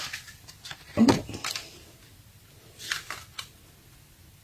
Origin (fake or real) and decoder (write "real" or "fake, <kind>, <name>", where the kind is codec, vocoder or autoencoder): real